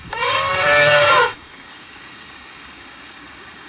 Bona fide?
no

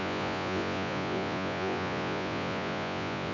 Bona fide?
no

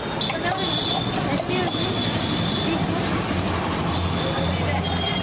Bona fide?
yes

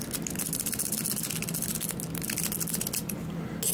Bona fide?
yes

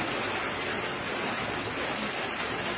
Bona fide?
yes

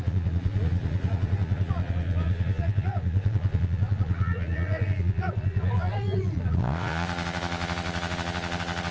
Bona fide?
no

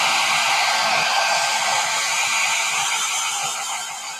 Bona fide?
yes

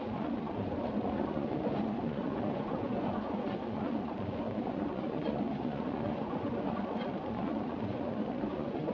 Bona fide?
no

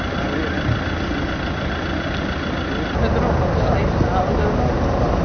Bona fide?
yes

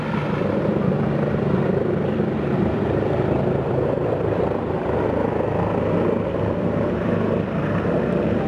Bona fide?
no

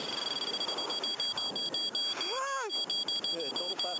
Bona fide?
yes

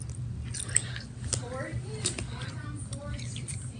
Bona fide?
yes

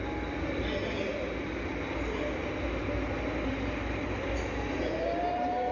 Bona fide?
yes